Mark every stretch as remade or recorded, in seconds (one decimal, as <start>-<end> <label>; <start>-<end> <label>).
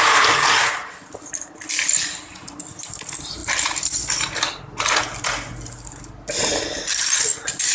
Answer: 0.0-7.7 recorded